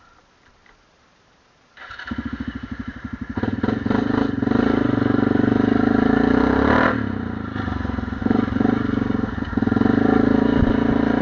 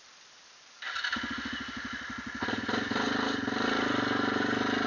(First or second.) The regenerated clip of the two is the first